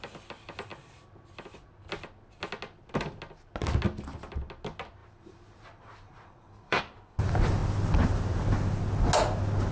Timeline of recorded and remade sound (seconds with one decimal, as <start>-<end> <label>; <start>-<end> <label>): 0.0-5.0 recorded; 5.0-6.8 remade; 6.8-9.7 recorded